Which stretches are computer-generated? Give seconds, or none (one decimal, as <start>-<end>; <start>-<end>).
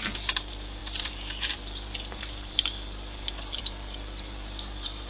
0.0-5.1